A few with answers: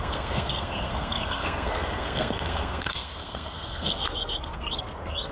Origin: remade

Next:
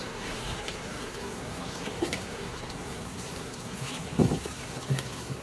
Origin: remade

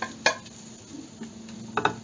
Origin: recorded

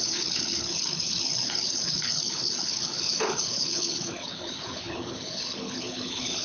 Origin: remade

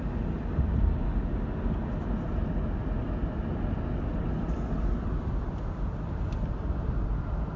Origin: recorded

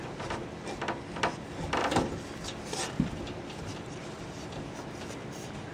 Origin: recorded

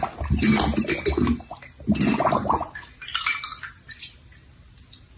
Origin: recorded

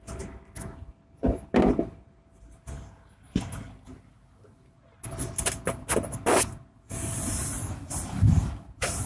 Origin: recorded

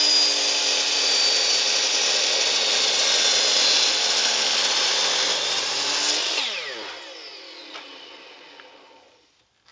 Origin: recorded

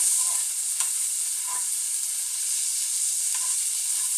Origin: recorded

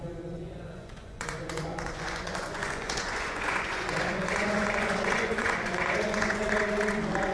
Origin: remade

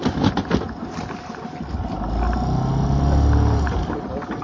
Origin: recorded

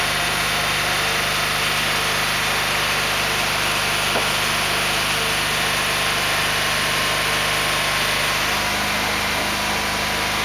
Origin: recorded